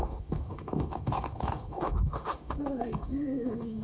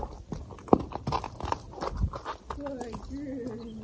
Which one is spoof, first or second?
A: first